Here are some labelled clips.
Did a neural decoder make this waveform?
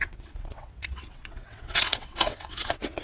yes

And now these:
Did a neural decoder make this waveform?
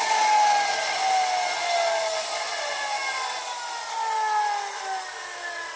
no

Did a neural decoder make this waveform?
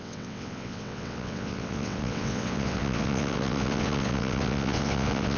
yes